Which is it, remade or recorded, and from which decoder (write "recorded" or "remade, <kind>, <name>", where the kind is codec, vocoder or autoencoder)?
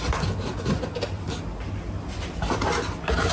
recorded